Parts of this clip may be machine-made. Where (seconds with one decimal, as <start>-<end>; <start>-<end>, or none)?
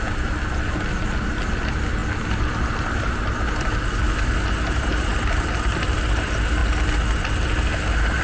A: none